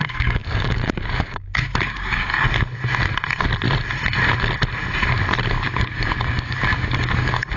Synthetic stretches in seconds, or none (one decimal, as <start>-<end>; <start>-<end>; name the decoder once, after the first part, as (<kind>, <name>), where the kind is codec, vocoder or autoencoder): 0.0-2.3 (codec, DAC); 5.5-7.6